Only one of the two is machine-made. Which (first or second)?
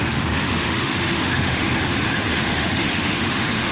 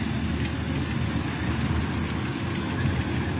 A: first